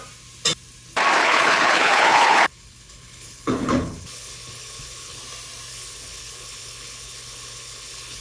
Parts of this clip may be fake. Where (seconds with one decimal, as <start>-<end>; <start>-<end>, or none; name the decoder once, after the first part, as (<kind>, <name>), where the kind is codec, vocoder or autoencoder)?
1.2-5.2 (codec, HILCodec); 5.7-8.2